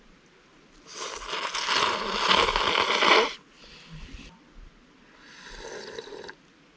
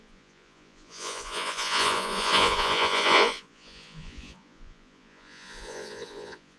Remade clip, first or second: second